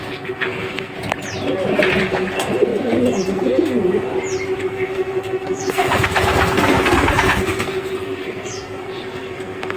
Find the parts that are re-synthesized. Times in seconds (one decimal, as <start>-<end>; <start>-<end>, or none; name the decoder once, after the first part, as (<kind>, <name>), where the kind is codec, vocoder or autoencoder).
0.0-0.9 (codec, SNAC); 2.0-4.1; 4.6-9.8